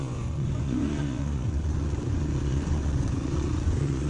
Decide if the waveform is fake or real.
fake